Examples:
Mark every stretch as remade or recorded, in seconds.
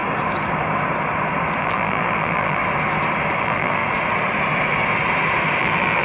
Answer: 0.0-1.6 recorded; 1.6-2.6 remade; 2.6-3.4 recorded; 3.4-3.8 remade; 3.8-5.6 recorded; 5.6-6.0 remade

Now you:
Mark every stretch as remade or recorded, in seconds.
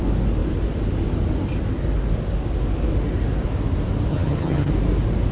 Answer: 0.0-4.1 recorded; 4.1-4.7 remade; 4.7-5.3 recorded